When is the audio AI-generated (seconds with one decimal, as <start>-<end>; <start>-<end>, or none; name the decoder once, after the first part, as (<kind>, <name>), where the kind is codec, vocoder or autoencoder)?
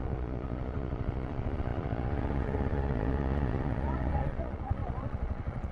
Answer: 0.0-5.7 (vocoder, Vocos)